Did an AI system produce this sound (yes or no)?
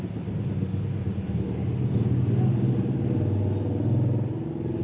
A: no